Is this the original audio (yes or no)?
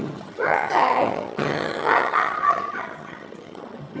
no